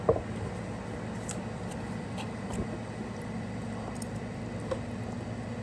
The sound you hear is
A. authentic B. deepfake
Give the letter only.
A